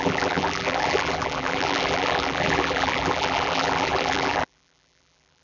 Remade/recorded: remade